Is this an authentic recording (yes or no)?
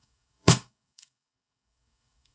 no